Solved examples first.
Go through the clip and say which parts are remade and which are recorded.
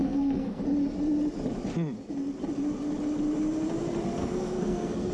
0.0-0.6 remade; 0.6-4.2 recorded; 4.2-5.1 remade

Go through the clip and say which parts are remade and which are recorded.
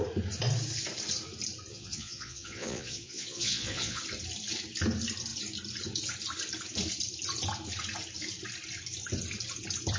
0.0-1.7 recorded; 1.7-4.0 remade; 4.0-10.0 recorded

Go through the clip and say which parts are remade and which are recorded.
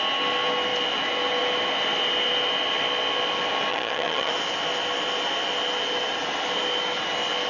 0.0-3.7 recorded; 3.7-4.3 remade; 4.3-7.5 recorded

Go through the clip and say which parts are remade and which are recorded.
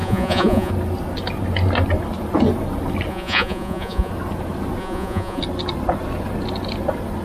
0.0-0.7 remade; 0.7-3.1 recorded; 3.1-4.1 remade; 4.1-4.8 recorded; 4.8-5.4 remade; 5.4-7.2 recorded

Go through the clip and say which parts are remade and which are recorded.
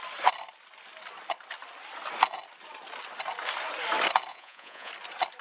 0.0-4.3 recorded; 4.3-4.9 remade; 4.9-5.4 recorded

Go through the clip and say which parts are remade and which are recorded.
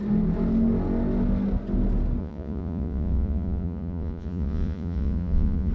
0.0-2.2 recorded; 2.2-5.7 remade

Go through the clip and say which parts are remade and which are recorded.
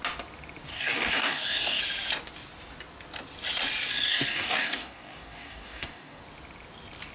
0.0-0.7 recorded; 0.7-1.8 remade; 1.8-4.1 recorded; 4.1-6.2 remade; 6.2-7.1 recorded